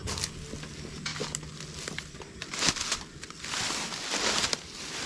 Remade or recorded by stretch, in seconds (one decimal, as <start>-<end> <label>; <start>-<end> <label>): 0.0-5.1 recorded